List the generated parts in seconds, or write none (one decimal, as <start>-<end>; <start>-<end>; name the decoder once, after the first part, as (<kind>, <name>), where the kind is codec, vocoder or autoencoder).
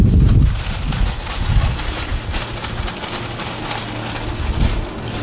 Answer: none